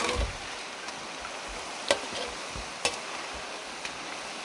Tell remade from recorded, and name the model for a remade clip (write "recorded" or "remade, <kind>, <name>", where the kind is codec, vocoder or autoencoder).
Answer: recorded